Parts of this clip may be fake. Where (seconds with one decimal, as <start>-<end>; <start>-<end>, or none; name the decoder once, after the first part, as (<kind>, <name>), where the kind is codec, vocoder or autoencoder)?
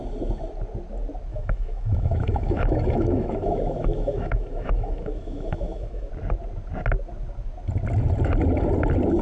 1.3-6.1 (autoencoder, DAC-VAE)